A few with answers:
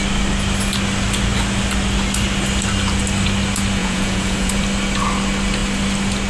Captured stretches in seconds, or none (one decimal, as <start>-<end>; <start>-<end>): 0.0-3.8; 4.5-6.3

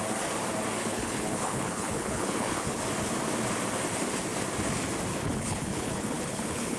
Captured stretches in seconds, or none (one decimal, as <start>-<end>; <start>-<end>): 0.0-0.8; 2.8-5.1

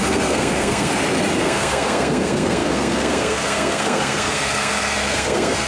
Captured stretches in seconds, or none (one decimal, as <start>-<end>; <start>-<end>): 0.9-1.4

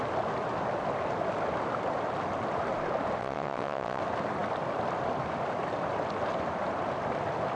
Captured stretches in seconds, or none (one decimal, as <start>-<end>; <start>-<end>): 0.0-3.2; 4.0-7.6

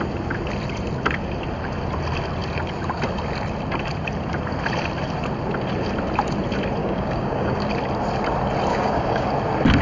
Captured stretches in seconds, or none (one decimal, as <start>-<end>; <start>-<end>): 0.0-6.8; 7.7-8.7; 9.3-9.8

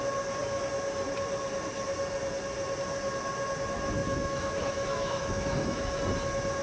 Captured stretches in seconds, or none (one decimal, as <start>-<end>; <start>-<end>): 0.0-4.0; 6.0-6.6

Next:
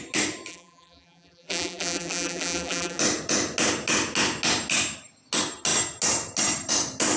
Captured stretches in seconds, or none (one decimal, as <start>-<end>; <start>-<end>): 0.0-0.5; 3.0-7.2

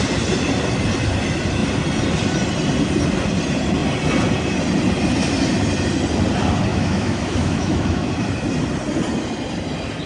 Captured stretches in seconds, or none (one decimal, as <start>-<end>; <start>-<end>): 0.0-6.7; 8.1-10.1